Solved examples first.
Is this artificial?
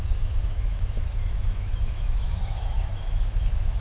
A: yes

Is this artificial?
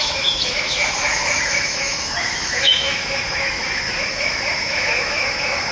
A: yes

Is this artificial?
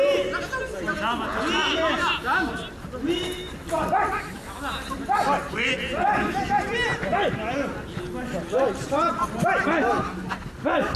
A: no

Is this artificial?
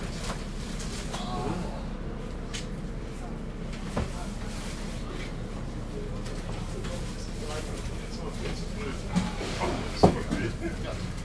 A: no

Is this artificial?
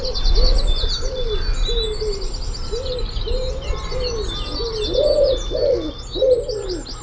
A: no